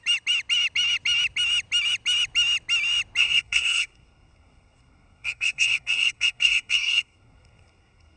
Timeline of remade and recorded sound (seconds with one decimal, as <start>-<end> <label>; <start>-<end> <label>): 0.0-3.2 recorded; 3.2-8.2 remade